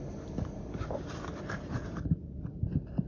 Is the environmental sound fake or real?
real